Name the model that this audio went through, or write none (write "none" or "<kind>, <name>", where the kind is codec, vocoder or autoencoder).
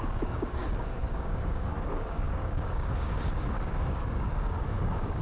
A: codec, DAC